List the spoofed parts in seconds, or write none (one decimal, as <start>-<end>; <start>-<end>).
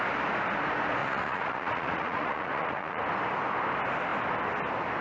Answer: 1.0-3.0